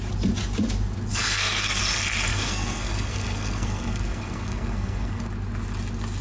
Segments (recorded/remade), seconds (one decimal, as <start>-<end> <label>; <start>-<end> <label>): 0.0-1.1 recorded; 1.1-1.8 remade; 1.8-2.3 recorded; 2.3-5.2 remade; 5.2-6.2 recorded

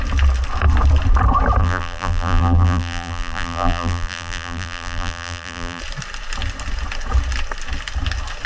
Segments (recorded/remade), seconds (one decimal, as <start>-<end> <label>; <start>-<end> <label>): 0.0-1.6 recorded; 1.6-5.8 remade; 5.8-8.5 recorded

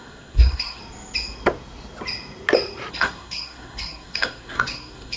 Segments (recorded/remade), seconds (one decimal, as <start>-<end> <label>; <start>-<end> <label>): 0.0-0.8 remade; 0.8-2.9 recorded; 2.9-5.2 remade

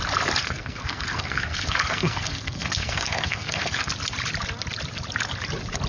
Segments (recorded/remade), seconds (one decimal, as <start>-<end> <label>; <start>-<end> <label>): 0.0-0.4 recorded; 0.4-3.9 remade; 3.9-5.9 recorded

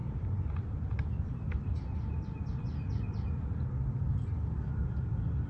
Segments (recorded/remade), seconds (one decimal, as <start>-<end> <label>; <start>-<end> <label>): 0.0-2.6 remade; 2.6-5.5 recorded

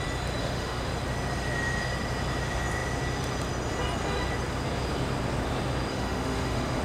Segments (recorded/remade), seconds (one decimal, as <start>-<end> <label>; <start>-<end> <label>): 0.0-0.4 recorded; 0.4-0.9 remade; 0.9-5.9 recorded; 5.9-6.8 remade

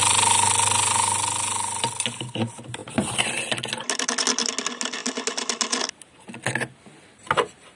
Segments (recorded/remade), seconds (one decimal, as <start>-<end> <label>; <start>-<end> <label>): 0.0-7.8 recorded

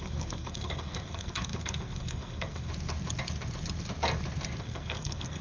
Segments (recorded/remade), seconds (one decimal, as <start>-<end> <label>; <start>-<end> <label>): 0.0-2.7 remade; 2.7-4.6 recorded; 4.6-5.4 remade